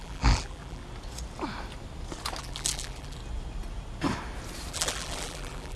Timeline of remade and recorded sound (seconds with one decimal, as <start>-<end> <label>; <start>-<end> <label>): 0.0-0.8 remade; 0.8-2.4 recorded; 2.4-3.2 remade; 3.2-4.7 recorded; 4.7-5.8 remade